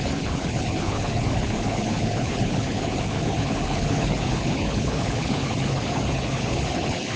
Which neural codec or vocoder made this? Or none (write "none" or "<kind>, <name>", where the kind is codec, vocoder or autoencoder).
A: codec, HILCodec